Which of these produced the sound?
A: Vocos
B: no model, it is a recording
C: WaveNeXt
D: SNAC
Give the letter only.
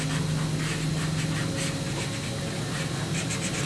B